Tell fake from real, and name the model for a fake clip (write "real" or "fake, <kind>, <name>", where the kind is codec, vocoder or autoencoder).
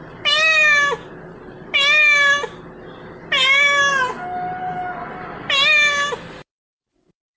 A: real